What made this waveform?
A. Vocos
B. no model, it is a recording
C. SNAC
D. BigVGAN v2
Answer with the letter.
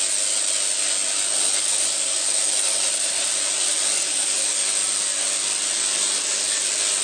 B